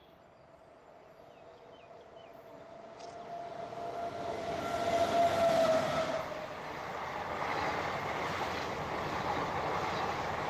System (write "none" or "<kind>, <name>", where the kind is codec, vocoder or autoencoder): none